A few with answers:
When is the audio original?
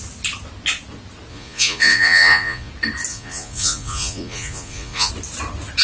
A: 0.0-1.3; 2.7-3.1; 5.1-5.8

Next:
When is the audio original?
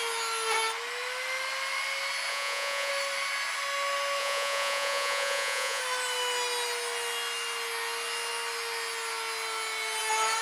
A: 0.0-2.3; 2.9-4.2; 5.8-10.4